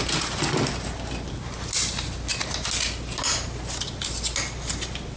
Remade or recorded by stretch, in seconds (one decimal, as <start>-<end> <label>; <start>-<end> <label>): 0.0-5.2 recorded